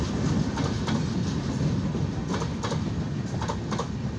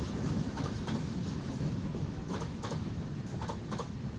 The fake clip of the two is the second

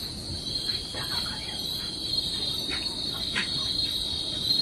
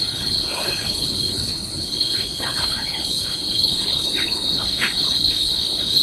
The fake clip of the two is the second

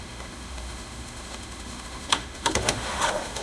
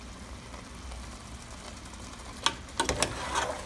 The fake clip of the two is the first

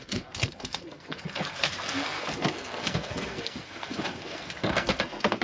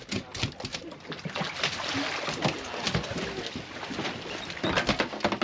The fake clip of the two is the first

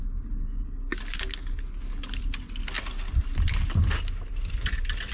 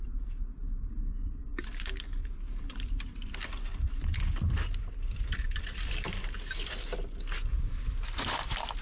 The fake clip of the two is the second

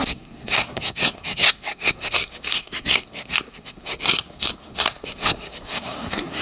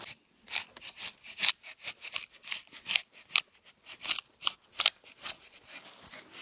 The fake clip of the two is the first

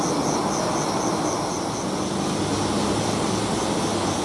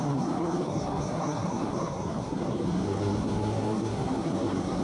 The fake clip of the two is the second